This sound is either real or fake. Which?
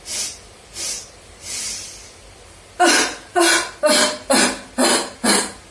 real